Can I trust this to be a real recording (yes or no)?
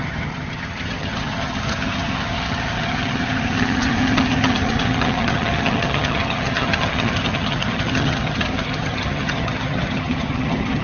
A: no